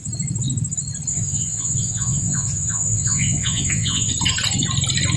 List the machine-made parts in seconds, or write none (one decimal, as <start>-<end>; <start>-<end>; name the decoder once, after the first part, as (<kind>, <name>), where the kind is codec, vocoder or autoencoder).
1.1-4.1 (vocoder, Vocos)